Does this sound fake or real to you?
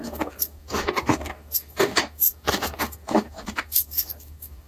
fake